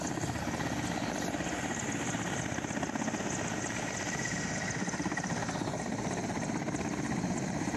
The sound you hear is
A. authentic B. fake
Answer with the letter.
A